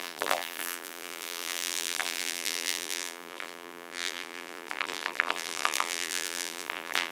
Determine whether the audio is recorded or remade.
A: remade